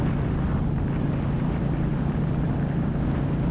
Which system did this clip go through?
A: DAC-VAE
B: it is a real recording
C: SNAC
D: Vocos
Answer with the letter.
B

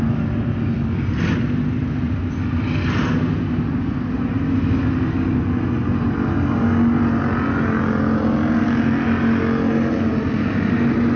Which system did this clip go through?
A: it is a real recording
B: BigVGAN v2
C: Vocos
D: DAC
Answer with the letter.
A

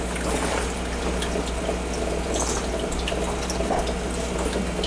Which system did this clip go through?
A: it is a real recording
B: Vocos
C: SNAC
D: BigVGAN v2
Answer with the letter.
A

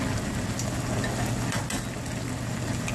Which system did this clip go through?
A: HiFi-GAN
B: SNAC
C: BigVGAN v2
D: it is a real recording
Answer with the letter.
D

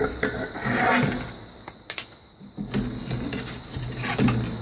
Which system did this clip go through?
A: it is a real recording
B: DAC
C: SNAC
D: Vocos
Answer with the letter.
A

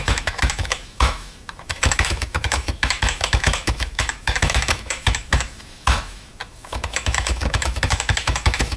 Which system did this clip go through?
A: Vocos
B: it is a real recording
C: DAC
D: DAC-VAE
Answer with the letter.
D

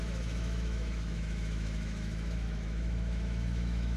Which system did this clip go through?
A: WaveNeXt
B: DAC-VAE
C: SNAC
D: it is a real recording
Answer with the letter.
B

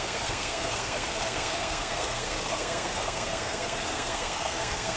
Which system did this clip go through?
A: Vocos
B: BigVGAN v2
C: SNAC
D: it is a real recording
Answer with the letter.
C